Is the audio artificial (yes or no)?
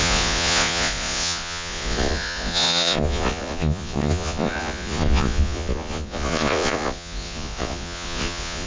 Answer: yes